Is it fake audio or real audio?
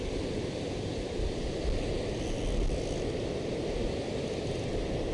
real